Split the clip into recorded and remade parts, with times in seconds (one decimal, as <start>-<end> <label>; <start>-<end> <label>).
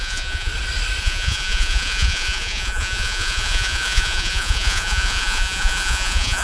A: 0.0-0.5 remade; 0.5-1.0 recorded; 1.0-6.4 remade